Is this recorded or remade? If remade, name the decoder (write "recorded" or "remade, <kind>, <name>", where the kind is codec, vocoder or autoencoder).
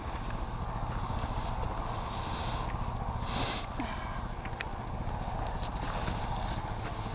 recorded